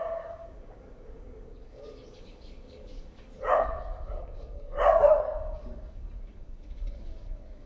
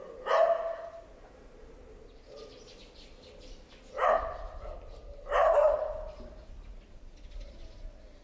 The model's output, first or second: first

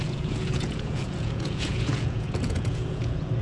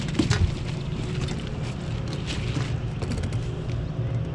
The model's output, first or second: first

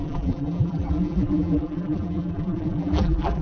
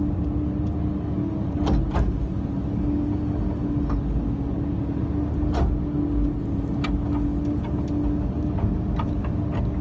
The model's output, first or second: first